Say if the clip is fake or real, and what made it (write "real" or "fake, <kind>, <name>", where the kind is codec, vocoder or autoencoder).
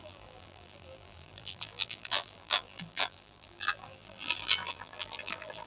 fake, vocoder, BigVGAN v2